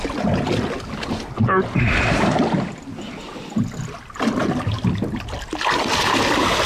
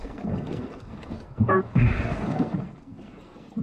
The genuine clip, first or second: first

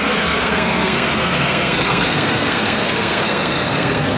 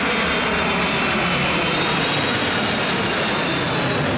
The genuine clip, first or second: second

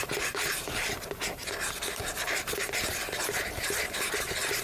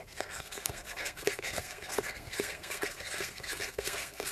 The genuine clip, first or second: first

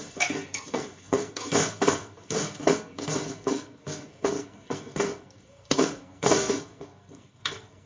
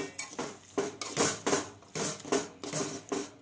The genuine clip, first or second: second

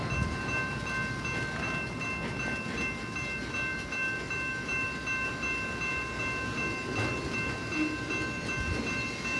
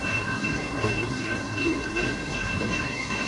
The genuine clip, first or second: first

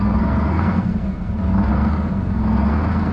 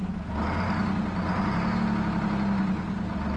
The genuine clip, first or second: second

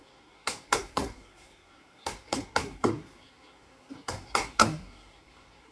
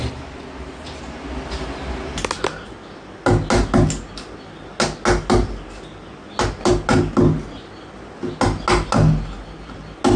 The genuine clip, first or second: second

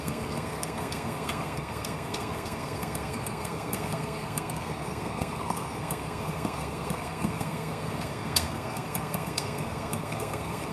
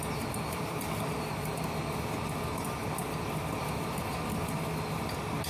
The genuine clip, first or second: second